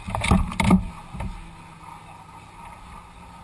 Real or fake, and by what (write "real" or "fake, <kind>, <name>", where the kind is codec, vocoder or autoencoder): real